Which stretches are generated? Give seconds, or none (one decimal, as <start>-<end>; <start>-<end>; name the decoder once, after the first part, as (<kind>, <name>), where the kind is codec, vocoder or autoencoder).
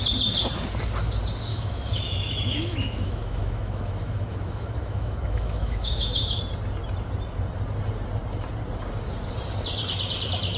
1.5-6.4 (autoencoder, DAC-VAE)